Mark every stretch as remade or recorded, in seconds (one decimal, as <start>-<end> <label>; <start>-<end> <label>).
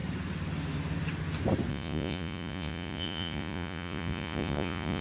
0.0-1.7 recorded; 1.7-5.0 remade